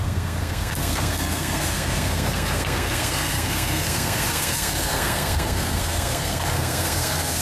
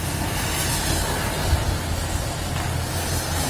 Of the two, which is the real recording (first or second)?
second